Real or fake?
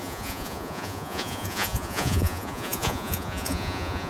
fake